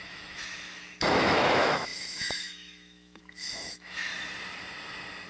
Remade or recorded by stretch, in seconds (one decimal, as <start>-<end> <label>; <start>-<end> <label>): 0.0-4.1 remade; 4.1-5.3 recorded